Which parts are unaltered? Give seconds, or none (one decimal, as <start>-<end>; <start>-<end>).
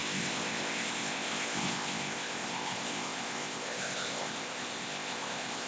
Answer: none